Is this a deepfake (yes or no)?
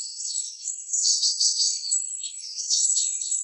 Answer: yes